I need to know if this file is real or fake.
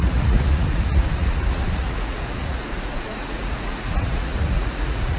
fake